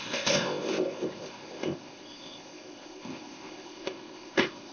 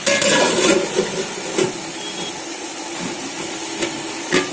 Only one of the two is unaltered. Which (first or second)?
second